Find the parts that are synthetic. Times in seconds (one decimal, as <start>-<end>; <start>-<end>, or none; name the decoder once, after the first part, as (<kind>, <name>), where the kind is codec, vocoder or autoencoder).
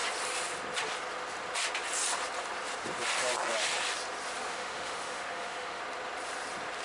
4.5-5.8 (autoencoder, DAC-VAE)